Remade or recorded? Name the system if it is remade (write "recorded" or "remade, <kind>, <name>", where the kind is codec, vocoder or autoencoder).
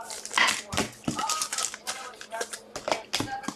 recorded